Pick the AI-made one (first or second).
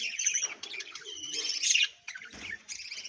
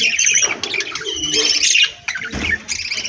first